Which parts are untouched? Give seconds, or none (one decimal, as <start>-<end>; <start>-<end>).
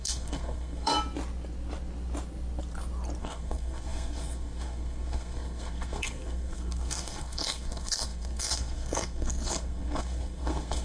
0.9-3.2